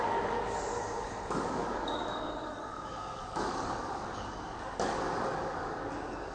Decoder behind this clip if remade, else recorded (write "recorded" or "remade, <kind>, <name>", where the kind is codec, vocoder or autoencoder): remade, codec, DAC